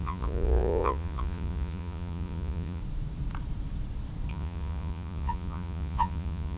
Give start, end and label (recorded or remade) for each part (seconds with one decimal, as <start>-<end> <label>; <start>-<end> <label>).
0.0-2.8 remade; 2.8-4.3 recorded; 4.3-6.6 remade